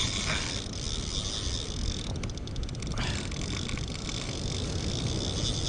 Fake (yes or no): no